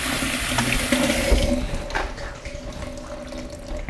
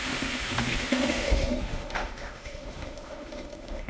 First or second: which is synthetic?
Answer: second